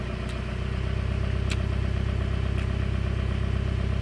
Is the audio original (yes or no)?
yes